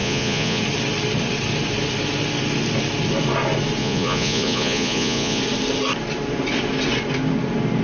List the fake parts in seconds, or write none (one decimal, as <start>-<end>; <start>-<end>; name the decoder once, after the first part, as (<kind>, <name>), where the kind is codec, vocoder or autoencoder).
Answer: 0.0-0.6 (vocoder, Vocos); 3.8-5.4